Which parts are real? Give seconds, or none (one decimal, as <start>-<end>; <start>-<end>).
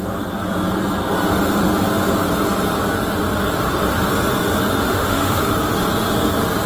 0.0-4.8; 5.4-6.7